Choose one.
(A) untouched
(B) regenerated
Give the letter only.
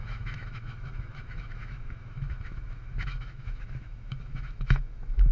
B